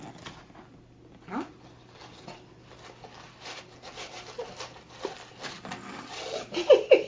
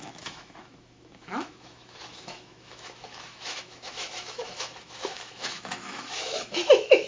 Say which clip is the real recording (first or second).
first